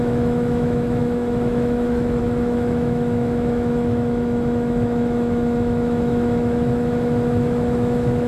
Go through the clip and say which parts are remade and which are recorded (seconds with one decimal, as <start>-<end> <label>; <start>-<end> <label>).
0.0-8.3 remade